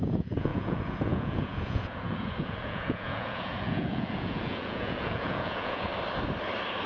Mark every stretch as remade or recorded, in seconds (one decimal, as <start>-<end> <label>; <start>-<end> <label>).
0.0-5.9 remade; 5.9-6.9 recorded